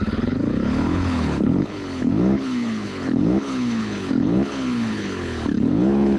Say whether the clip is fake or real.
fake